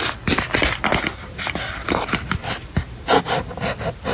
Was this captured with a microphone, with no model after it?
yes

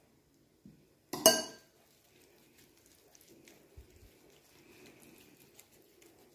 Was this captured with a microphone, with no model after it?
yes